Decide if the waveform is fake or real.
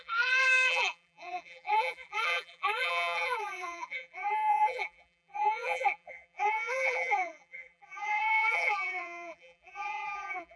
fake